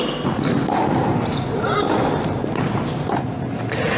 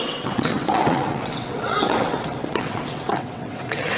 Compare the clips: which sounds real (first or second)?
first